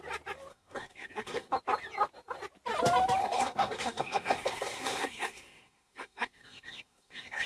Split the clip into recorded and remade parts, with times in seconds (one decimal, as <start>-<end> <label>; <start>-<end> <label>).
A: 0.0-0.5 recorded; 0.5-1.5 remade; 1.5-3.2 recorded; 3.2-7.5 remade